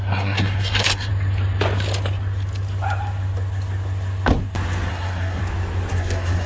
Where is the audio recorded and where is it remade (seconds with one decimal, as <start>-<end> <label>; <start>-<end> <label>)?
0.0-1.1 remade; 1.1-4.9 recorded; 4.9-5.4 remade; 5.4-5.9 recorded; 5.9-6.5 remade